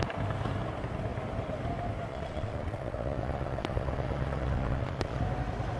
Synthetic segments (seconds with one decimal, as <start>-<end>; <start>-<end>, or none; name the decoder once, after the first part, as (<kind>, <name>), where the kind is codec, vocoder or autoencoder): 2.1-5.2 (vocoder, Vocos)